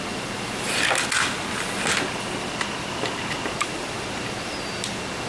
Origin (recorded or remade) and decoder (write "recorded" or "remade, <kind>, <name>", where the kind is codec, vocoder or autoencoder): recorded